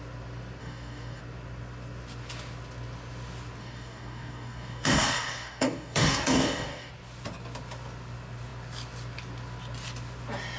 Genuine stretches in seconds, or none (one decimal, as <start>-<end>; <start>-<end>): 0.0-0.6; 1.2-3.6; 6.9-10.6